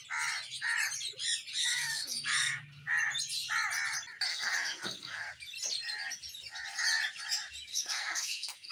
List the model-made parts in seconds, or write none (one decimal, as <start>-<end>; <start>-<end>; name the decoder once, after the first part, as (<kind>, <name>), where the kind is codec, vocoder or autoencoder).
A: 1.6-2.6 (codec, SNAC); 4.3-5.3; 7.7-8.7